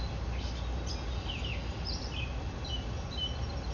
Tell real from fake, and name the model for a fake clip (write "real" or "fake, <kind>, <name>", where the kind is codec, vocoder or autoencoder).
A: real